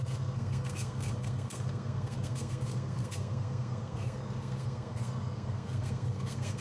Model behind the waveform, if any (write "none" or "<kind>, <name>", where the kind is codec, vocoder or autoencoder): codec, SNAC